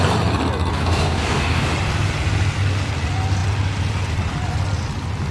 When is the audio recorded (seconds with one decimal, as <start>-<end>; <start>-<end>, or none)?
0.0-0.7; 1.7-5.3